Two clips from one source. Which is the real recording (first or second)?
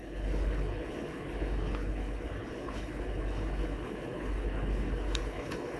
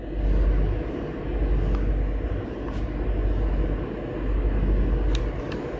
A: second